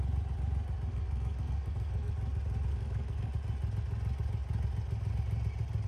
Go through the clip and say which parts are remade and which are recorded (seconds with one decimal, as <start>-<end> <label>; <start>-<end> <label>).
0.0-0.9 recorded; 0.9-2.1 remade; 2.1-2.7 recorded; 2.7-3.3 remade; 3.3-5.9 recorded